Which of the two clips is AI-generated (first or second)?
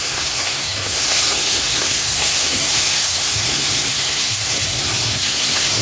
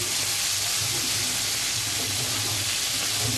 first